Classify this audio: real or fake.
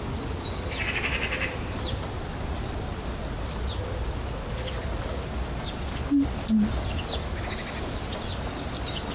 real